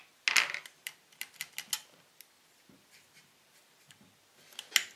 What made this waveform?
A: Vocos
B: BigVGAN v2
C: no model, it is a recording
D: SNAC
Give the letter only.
C